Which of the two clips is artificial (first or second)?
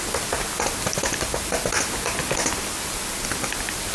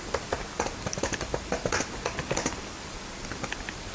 second